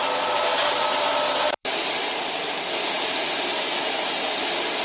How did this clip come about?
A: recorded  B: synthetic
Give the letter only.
B